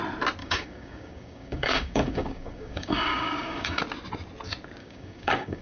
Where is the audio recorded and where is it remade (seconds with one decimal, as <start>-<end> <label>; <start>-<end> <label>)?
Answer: 0.0-0.4 recorded; 0.4-3.8 remade; 3.8-4.8 recorded; 4.8-5.6 remade